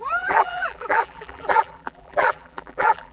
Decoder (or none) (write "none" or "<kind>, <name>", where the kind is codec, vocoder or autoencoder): vocoder, BigVGAN v2